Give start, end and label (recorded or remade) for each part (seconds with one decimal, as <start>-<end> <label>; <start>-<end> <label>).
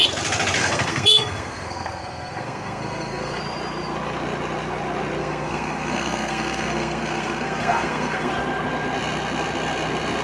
0.0-0.6 recorded; 0.6-3.4 remade; 3.4-5.2 recorded; 5.2-8.3 remade; 8.3-10.2 recorded